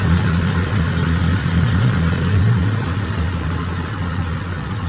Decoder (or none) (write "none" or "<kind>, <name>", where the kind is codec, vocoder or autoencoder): vocoder, Vocos